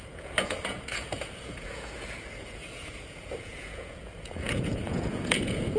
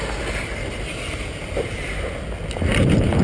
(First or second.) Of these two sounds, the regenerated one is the first